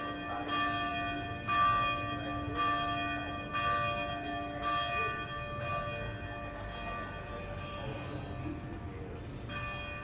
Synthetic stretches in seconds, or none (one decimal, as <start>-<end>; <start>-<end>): none